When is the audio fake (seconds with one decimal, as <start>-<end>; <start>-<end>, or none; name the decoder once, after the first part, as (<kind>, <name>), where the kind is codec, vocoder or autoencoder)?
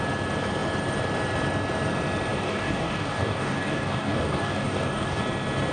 2.3-5.2 (codec, DAC)